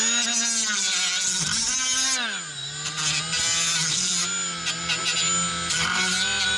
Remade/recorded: recorded